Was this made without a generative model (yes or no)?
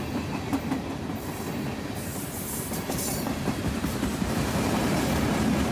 no